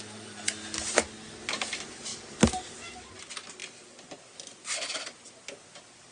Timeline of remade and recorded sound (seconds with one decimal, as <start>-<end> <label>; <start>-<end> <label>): 0.0-2.1 recorded; 2.1-3.1 remade; 3.1-6.1 recorded

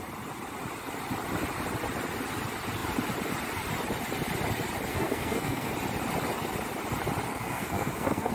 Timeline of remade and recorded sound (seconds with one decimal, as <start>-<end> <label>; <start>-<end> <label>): 0.0-4.9 recorded; 4.9-5.7 remade; 5.7-7.3 recorded; 7.3-8.3 remade

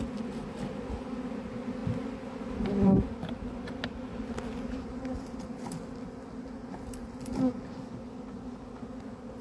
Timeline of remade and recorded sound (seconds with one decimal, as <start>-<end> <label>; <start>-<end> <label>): 0.0-9.4 recorded

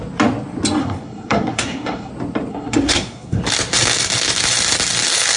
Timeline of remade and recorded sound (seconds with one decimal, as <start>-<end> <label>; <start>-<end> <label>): 0.0-0.8 recorded; 0.8-2.1 remade; 2.1-2.5 recorded; 2.5-3.4 remade; 3.4-5.4 recorded

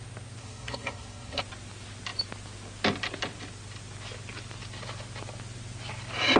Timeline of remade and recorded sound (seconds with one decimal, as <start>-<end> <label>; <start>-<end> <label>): 0.0-0.4 recorded; 0.4-1.4 remade; 1.4-6.4 recorded